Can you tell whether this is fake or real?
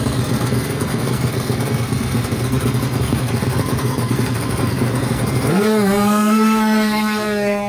fake